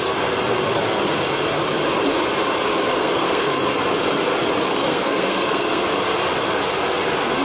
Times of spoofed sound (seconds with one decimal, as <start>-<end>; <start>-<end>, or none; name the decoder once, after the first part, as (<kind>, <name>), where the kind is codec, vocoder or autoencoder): 2.9-3.6 (codec, SNAC); 4.7-5.8